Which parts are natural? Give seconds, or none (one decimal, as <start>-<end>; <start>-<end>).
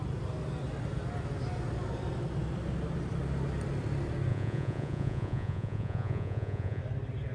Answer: 0.0-4.3; 6.8-7.3